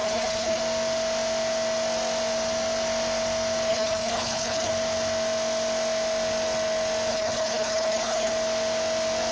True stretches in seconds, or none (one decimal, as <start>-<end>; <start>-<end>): 0.6-3.7; 4.7-7.1; 8.3-9.3